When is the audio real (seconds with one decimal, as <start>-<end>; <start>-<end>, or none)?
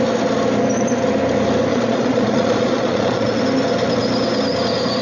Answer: 0.0-1.7; 3.4-5.0